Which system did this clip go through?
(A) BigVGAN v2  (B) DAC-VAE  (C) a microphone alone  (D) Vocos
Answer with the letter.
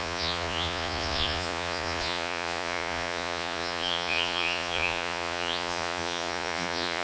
D